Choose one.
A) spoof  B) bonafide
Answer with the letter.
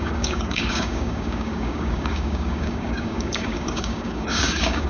A